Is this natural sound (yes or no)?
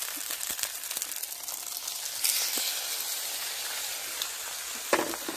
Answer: yes